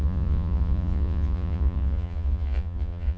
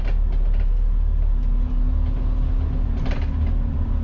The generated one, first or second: first